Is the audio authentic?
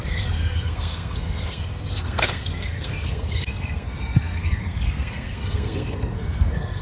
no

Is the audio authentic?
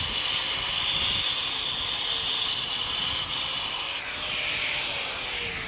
yes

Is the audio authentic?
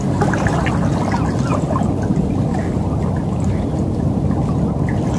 yes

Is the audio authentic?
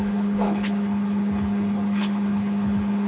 no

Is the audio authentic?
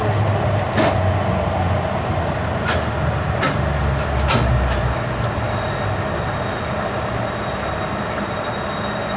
yes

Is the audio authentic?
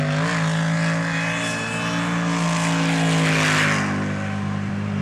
yes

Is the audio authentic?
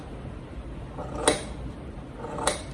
yes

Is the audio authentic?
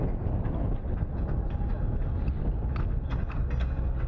yes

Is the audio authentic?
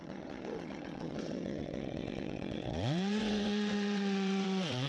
no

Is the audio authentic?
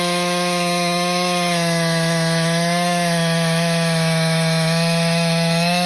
no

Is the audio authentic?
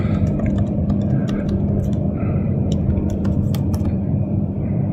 no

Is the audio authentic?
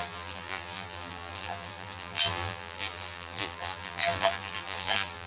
no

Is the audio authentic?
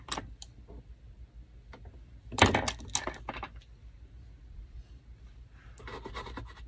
yes